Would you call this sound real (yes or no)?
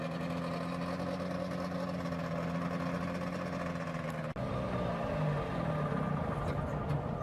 yes